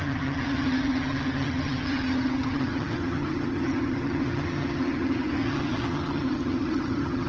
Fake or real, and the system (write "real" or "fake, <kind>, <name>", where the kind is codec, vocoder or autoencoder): fake, vocoder, HiFi-GAN